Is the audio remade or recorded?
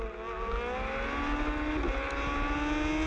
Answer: recorded